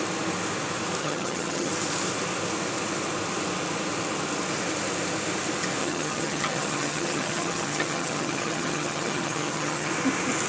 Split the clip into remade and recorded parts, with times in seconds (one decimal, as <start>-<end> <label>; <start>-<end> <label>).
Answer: 0.0-1.0 recorded; 1.0-1.7 remade; 1.7-5.8 recorded; 5.8-9.9 remade; 9.9-10.5 recorded